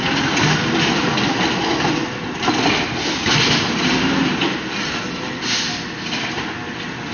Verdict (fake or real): real